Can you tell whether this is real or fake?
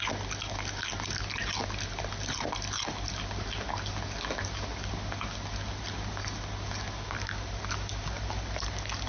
real